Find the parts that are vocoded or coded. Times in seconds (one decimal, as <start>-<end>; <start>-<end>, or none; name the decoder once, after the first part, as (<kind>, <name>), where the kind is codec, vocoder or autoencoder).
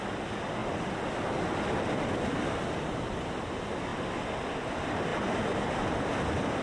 none